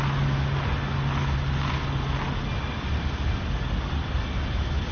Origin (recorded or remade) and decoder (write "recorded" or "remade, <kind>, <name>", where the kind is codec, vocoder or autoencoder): recorded